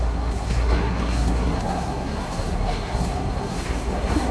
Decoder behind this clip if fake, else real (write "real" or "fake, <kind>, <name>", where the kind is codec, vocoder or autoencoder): fake, codec, SNAC